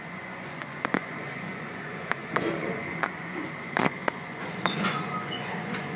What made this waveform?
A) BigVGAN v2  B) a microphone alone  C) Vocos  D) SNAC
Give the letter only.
C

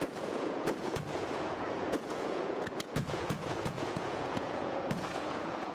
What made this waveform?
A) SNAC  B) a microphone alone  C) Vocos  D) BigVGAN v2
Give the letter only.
C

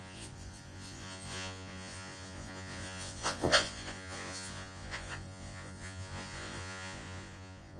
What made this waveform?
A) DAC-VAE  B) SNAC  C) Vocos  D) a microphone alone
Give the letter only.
C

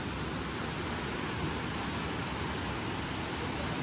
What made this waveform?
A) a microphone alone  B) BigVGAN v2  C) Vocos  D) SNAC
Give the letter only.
A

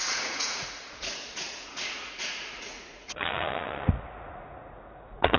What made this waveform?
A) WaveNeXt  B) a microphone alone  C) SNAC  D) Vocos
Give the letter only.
D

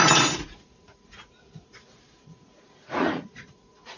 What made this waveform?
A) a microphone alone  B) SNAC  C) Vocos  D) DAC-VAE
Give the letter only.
C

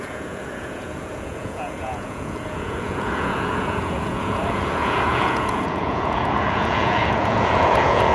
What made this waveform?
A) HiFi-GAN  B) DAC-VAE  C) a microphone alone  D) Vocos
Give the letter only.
D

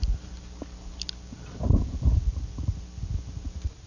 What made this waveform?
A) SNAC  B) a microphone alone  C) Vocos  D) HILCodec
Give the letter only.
B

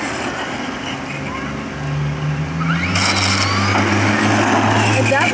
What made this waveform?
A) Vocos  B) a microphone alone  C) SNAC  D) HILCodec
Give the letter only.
B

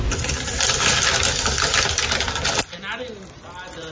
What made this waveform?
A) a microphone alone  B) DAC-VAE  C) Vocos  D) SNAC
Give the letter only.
A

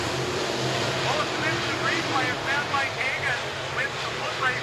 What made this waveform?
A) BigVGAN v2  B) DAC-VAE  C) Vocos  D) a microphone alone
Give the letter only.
D